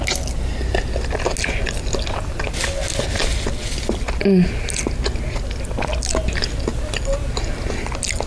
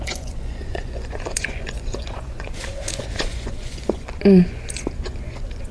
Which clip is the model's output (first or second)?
second